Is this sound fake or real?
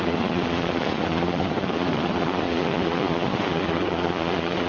fake